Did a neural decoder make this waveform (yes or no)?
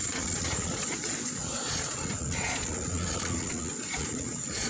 yes